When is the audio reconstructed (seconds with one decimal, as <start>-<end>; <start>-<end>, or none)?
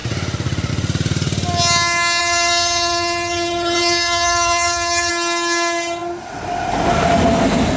2.2-5.1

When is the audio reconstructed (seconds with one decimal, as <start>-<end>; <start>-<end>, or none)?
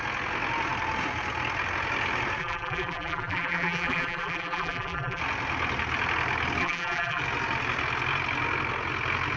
2.4-5.2; 6.6-7.2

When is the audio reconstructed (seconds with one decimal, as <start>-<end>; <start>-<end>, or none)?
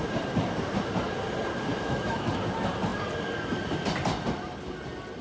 1.7-2.3